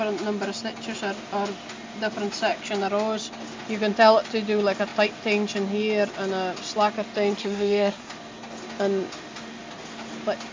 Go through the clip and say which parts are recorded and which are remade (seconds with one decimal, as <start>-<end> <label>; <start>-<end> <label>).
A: 0.0-7.4 recorded; 7.4-8.1 remade; 8.1-10.5 recorded